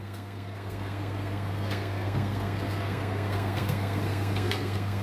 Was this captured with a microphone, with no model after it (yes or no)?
no